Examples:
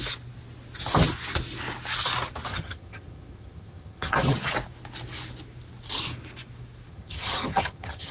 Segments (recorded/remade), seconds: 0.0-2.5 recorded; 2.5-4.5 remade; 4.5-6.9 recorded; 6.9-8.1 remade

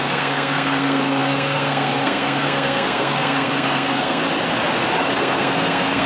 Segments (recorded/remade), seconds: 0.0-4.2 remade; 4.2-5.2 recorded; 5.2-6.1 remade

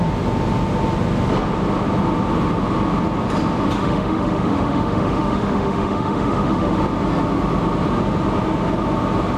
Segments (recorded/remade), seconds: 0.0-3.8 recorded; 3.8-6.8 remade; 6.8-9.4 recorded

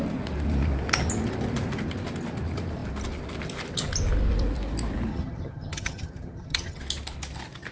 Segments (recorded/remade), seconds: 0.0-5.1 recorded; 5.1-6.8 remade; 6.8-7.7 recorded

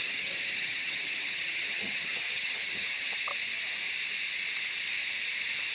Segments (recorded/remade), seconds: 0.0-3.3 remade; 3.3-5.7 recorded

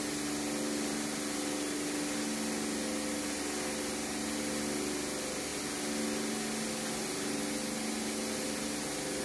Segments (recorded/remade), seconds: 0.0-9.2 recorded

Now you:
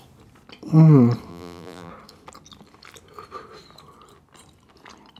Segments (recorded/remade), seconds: 0.0-1.3 recorded; 1.3-1.9 remade; 1.9-5.2 recorded